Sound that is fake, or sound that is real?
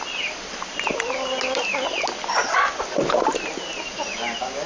real